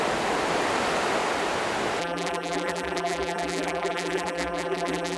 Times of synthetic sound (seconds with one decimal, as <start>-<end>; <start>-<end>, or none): 2.0-5.2